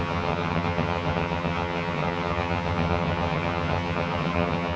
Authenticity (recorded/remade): remade